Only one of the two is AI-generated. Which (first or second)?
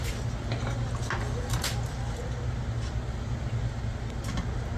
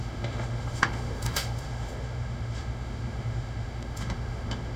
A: second